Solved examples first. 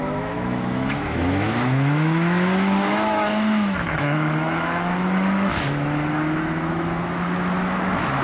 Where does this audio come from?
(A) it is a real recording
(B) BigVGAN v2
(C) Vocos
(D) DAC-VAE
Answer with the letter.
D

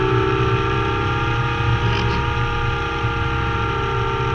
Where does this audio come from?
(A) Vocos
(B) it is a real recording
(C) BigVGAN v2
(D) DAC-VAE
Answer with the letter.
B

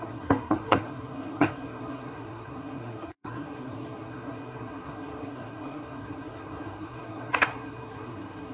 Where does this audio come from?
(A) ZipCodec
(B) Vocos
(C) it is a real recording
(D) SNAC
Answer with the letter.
D